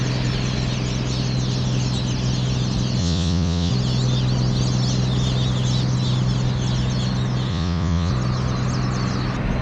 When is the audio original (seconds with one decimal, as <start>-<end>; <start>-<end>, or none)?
0.0-3.0; 3.7-7.5; 8.1-9.6